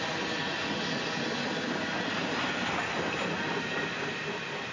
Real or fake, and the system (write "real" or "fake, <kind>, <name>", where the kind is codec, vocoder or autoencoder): real